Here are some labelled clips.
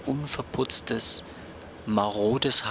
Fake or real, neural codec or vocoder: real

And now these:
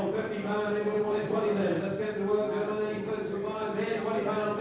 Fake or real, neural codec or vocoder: real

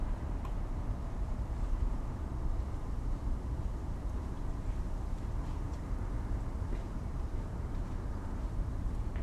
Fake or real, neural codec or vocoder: fake, vocoder, BigVGAN v2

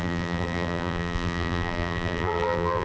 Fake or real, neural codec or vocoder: fake, vocoder, BigVGAN v2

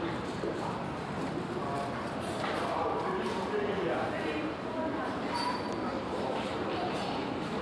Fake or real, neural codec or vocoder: fake, vocoder, BigVGAN v2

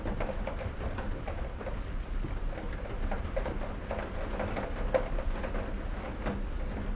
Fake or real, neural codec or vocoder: real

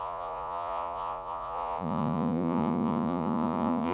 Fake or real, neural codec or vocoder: fake, vocoder, Vocos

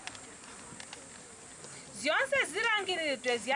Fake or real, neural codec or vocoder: real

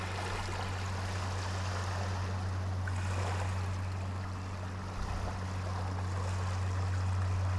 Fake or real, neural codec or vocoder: real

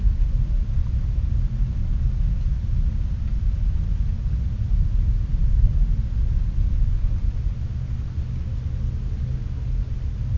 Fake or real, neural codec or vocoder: real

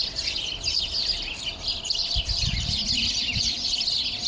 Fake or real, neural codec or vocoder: real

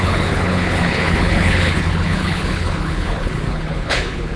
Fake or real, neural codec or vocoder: fake, codec, HILCodec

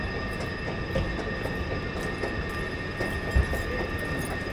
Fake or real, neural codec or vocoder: real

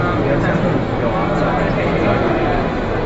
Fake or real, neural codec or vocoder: real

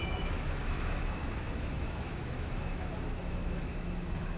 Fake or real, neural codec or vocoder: fake, autoencoder, DAC-VAE